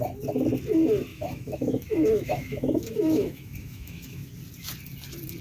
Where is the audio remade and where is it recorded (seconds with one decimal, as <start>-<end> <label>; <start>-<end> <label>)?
0.0-1.1 recorded; 1.1-4.3 remade; 4.3-5.4 recorded